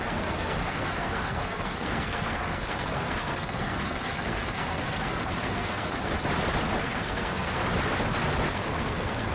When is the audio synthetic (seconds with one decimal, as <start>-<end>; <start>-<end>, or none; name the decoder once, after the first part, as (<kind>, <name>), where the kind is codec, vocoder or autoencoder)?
0.0-6.1 (codec, SNAC); 6.8-7.6; 8.5-9.3